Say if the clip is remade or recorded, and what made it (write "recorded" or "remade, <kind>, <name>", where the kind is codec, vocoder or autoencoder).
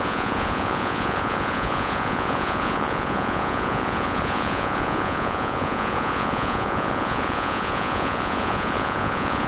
remade, vocoder, Vocos